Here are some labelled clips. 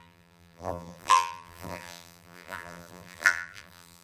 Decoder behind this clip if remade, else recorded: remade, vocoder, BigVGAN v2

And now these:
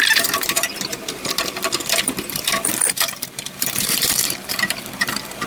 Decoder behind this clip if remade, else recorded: remade, vocoder, BigVGAN v2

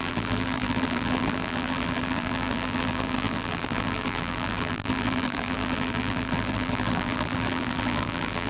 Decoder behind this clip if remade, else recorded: remade, vocoder, BigVGAN v2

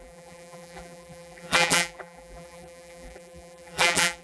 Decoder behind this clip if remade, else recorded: remade, vocoder, BigVGAN v2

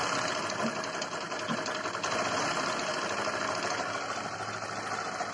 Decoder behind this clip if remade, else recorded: recorded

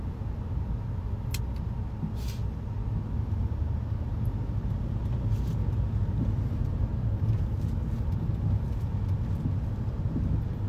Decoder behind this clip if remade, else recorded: recorded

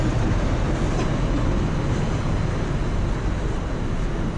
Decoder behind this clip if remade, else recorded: recorded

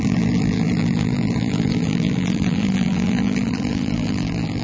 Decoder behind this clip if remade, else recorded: remade, vocoder, BigVGAN v2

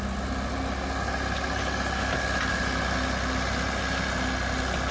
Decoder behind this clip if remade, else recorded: recorded